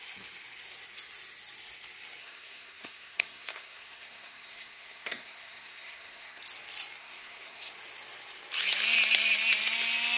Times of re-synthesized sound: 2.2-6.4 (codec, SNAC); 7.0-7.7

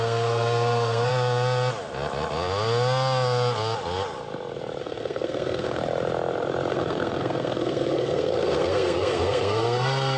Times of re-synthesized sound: 0.0-1.1 (codec, SNAC); 4.8-5.8; 6.7-10.2